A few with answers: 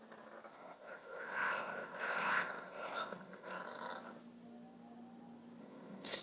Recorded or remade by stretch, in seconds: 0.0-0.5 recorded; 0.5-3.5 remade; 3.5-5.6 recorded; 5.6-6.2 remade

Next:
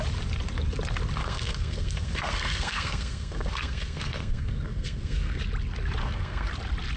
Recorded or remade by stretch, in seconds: 0.0-1.2 recorded; 1.2-5.4 remade; 5.4-6.0 recorded; 6.0-6.5 remade; 6.5-7.0 recorded

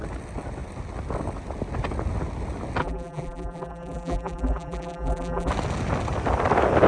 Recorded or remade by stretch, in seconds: 0.0-2.8 recorded; 2.8-5.5 remade; 5.5-6.9 recorded

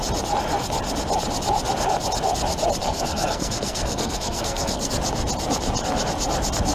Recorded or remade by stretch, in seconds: 0.0-2.8 recorded; 2.8-4.9 remade; 4.9-6.7 recorded